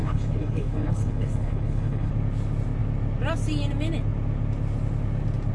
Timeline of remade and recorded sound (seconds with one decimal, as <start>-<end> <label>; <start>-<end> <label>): 0.0-2.1 remade; 2.1-5.5 recorded